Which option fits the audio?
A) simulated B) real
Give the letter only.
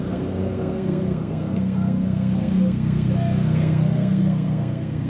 A